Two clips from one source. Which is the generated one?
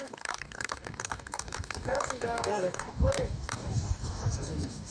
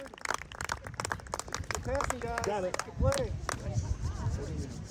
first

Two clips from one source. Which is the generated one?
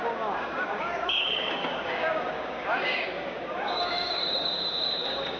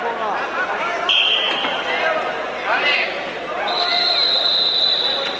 first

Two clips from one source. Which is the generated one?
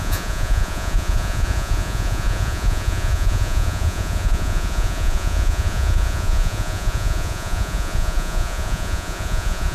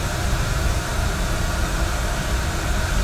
first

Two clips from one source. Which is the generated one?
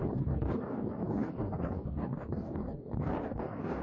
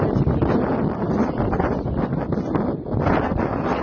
first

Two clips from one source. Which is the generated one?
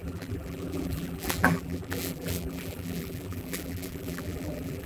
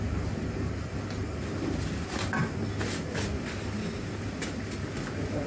first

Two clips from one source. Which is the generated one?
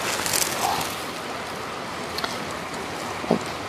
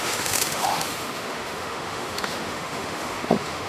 second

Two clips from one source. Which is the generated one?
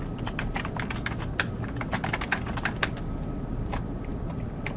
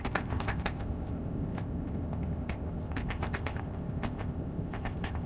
second